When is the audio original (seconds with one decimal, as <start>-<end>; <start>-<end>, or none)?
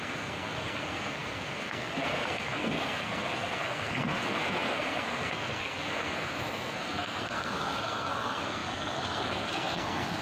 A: none